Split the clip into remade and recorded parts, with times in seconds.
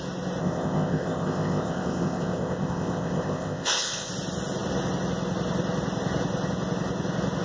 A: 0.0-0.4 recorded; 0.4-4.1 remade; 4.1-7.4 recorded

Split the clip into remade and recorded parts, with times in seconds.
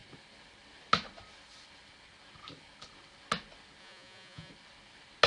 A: 0.0-3.8 recorded; 3.8-4.5 remade; 4.5-5.3 recorded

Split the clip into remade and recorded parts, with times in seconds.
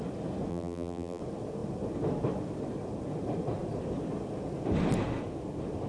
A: 0.0-0.5 recorded; 0.5-1.2 remade; 1.2-5.9 recorded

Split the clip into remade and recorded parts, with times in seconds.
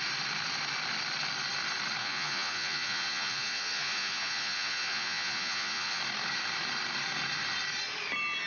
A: 0.0-2.0 recorded; 2.0-6.0 remade; 6.0-8.5 recorded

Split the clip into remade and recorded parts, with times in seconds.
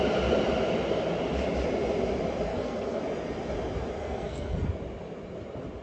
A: 0.0-2.5 recorded; 2.5-3.0 remade; 3.0-4.0 recorded; 4.0-4.6 remade; 4.6-5.8 recorded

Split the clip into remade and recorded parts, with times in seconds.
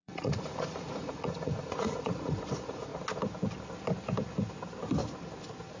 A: 0.0-2.9 remade; 2.9-5.8 recorded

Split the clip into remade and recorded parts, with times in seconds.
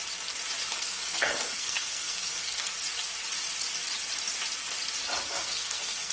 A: 0.0-0.7 recorded; 0.7-2.7 remade; 2.7-5.3 recorded; 5.3-6.1 remade